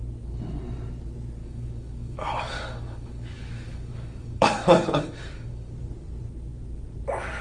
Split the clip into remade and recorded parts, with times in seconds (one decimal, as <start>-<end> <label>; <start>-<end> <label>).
0.0-1.4 recorded; 1.4-5.7 remade; 5.7-7.4 recorded